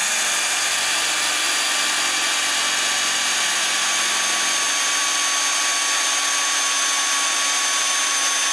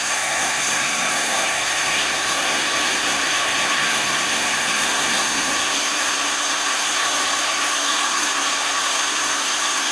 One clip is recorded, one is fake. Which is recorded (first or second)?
first